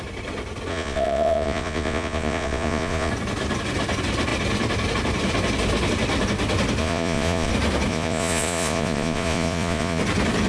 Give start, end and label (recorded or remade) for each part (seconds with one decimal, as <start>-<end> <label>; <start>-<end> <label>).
0.0-0.7 recorded; 0.7-3.1 remade; 3.1-6.8 recorded; 6.8-7.5 remade; 7.5-7.9 recorded; 7.9-10.0 remade; 10.0-10.5 recorded